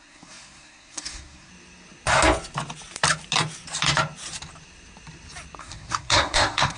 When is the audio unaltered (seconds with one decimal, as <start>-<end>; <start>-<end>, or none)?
1.5-5.6